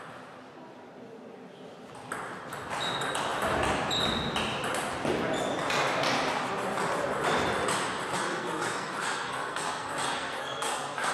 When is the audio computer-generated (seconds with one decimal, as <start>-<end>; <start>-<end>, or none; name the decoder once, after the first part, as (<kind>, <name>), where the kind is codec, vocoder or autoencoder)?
8.1-11.1 (codec, SNAC)